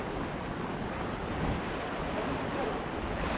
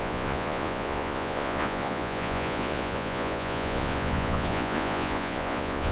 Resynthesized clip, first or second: second